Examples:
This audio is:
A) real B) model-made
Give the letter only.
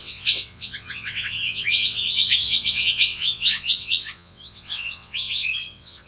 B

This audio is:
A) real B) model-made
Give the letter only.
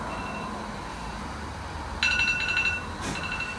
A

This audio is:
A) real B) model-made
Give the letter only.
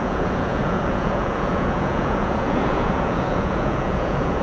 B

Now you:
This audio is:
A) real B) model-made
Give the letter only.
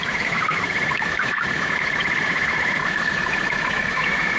B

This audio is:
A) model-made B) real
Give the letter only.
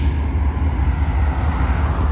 B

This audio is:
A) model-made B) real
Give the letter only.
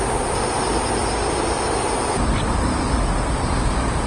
B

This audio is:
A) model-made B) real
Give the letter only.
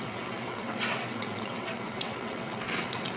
A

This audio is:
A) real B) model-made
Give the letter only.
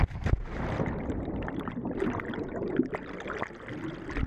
B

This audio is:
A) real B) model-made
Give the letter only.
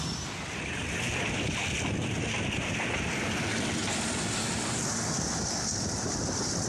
B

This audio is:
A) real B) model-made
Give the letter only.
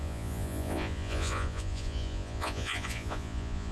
B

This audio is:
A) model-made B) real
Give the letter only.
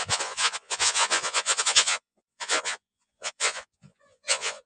A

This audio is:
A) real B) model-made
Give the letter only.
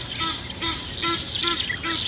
A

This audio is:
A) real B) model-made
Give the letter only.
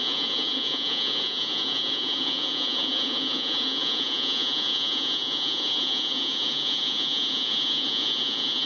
B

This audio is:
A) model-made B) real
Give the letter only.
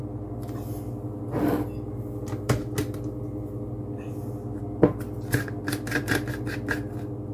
B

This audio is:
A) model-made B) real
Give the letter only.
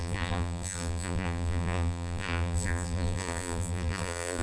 A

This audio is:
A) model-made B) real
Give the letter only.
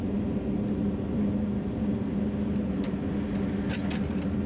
B